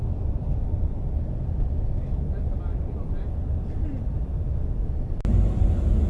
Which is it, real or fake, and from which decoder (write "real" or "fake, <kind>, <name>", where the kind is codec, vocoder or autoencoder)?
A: real